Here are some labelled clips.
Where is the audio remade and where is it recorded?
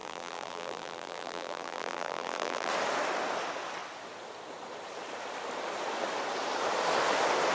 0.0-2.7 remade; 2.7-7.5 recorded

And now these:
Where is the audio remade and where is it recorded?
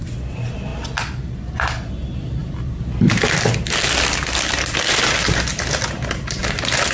0.0-2.4 recorded; 2.4-2.9 remade; 2.9-5.5 recorded; 5.5-6.4 remade; 6.4-6.9 recorded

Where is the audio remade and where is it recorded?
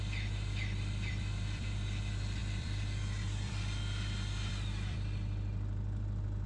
0.0-6.5 remade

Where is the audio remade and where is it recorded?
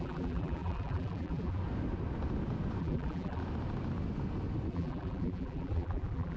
0.0-1.6 remade; 1.6-2.8 recorded; 2.8-3.4 remade; 3.4-4.7 recorded; 4.7-6.4 remade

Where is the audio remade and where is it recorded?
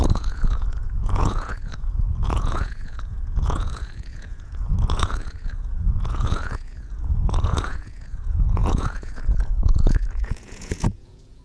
0.0-11.4 remade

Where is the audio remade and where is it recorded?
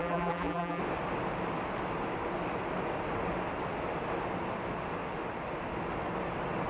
0.0-0.8 remade; 0.8-6.7 recorded